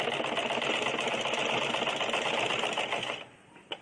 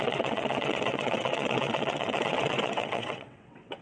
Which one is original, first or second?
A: first